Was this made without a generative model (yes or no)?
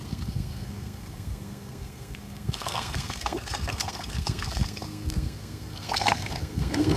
no